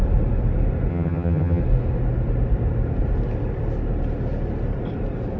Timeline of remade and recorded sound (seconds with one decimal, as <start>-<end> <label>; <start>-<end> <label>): 0.0-0.9 recorded; 0.9-1.6 remade; 1.6-5.4 recorded